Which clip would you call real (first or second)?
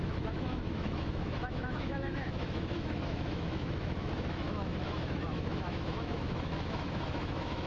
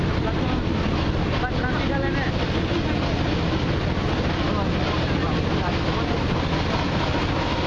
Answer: second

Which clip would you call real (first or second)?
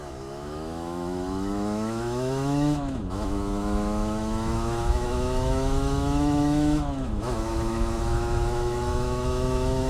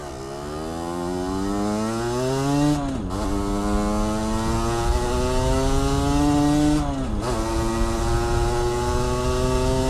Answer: second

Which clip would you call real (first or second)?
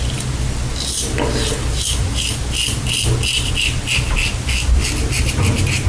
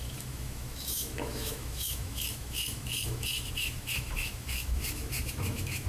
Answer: first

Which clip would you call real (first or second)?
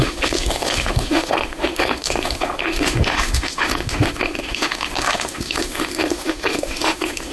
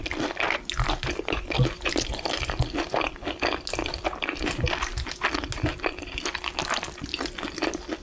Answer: second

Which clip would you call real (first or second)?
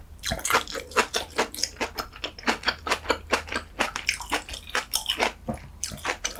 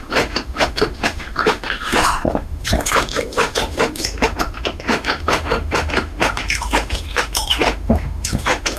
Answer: first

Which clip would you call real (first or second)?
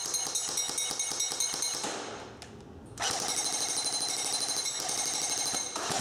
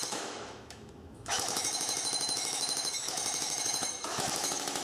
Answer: first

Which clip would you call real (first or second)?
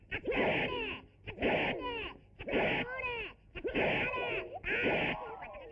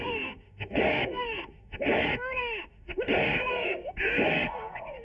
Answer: first